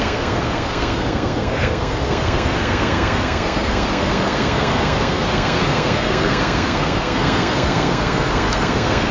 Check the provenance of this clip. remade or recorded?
remade